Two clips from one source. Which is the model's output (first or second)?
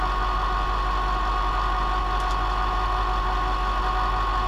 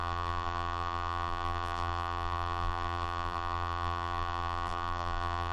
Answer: second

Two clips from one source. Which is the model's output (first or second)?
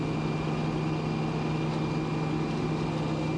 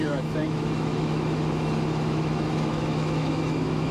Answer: second